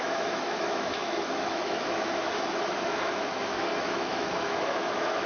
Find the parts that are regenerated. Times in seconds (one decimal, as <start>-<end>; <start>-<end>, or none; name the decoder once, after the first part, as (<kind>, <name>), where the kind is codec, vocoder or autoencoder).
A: 0.0-5.3 (autoencoder, DAC-VAE)